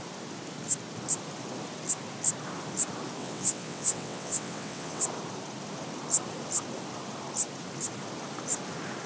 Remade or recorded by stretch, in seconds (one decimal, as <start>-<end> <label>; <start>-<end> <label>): 0.0-3.2 recorded; 3.2-5.0 remade; 5.0-9.1 recorded